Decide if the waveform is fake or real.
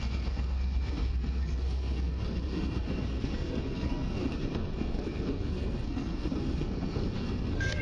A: fake